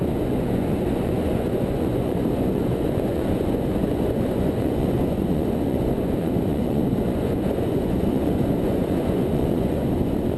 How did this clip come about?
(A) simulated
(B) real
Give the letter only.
A